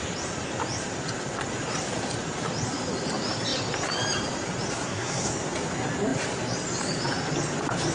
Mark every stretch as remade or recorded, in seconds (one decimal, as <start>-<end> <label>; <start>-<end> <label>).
0.0-4.7 recorded; 4.7-5.3 remade; 5.3-7.9 recorded